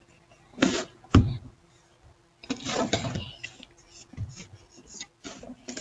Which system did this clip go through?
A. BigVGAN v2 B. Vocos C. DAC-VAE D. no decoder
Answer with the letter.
D